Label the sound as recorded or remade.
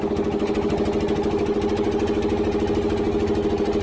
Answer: recorded